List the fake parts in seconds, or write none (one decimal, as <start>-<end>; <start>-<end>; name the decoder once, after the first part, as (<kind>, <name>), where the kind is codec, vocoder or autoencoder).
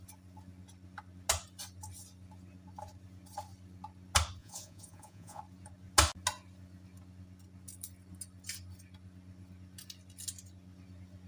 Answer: 4.4-5.4 (vocoder, Vocos)